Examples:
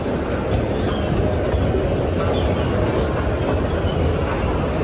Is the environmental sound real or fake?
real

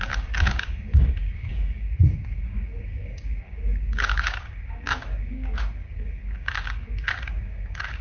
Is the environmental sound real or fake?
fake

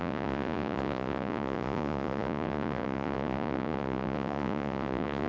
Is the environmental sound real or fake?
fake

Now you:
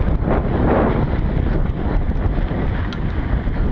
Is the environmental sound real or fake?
real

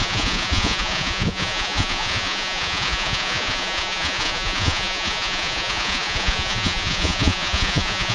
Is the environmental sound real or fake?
fake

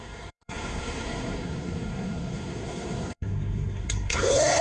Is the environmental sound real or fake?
fake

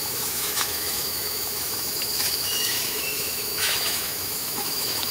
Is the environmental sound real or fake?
fake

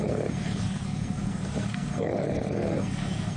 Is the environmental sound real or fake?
fake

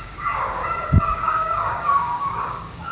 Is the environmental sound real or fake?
fake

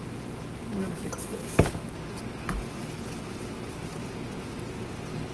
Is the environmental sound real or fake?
real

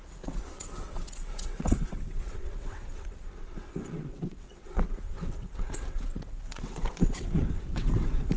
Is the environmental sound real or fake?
fake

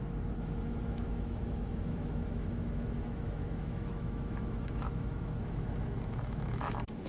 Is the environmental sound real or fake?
fake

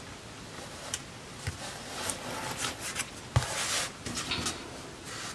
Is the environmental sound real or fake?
real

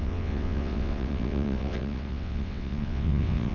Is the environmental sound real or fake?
fake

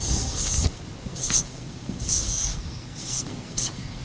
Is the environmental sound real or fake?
fake